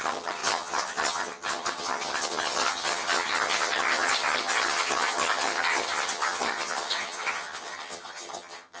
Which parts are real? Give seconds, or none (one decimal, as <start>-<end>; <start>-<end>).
none